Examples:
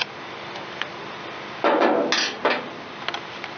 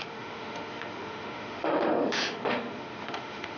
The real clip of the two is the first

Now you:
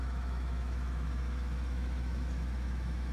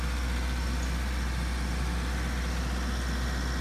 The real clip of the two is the second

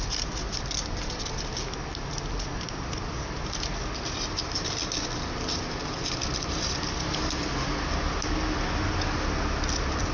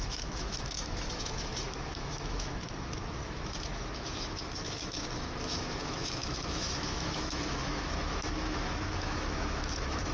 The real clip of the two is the first